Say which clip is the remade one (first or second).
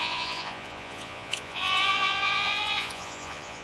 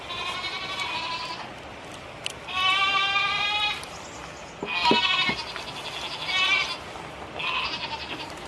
first